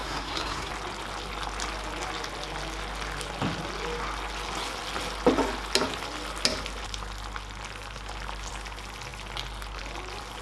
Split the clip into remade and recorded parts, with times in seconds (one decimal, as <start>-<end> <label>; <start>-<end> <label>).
0.0-0.7 remade; 0.7-10.4 recorded